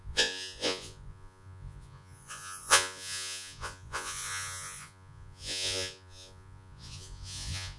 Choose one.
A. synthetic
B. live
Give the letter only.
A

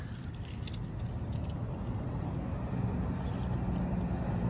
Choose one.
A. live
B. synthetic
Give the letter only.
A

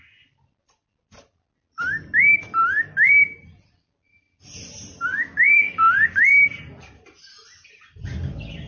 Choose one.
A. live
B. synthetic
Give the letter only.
A